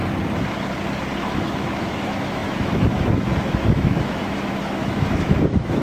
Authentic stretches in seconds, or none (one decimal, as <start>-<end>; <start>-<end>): 0.0-1.2